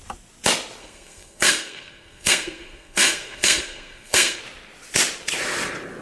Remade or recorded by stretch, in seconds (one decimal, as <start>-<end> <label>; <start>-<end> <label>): 0.0-0.8 recorded; 0.8-4.4 remade; 4.4-6.0 recorded